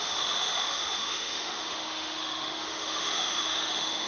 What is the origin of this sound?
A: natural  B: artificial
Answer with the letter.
B